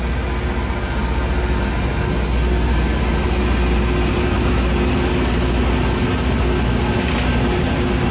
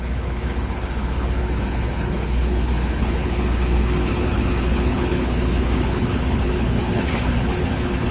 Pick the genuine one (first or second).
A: first